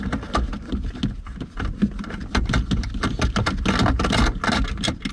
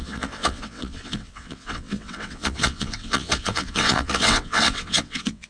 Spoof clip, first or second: second